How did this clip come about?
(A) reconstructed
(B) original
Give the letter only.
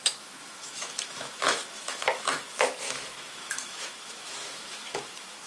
A